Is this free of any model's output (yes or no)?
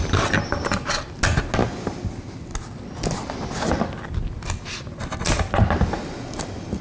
yes